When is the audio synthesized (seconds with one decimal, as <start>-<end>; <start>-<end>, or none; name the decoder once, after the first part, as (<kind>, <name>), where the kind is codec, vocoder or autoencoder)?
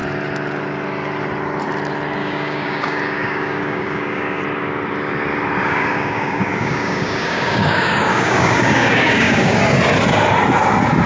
2.2-4.4 (codec, DAC); 5.6-9.6